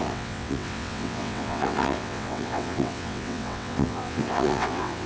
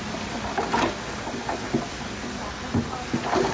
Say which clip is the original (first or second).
second